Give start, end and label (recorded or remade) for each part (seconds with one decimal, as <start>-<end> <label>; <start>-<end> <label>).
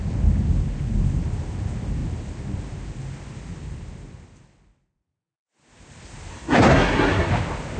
0.0-6.3 recorded; 6.3-7.3 remade; 7.3-7.8 recorded